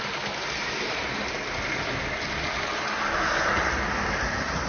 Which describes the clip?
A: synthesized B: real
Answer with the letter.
B